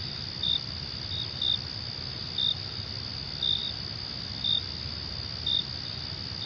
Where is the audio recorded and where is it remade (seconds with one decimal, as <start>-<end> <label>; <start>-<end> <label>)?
0.0-6.5 recorded